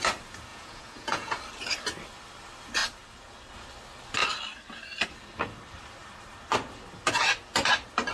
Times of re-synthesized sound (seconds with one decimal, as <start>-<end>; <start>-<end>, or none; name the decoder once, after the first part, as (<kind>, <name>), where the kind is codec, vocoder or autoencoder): 0.5-1.4 (vocoder, Vocos)